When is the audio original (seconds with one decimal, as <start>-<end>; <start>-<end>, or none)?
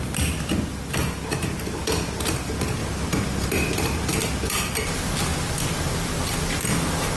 2.8-4.5; 5.3-6.3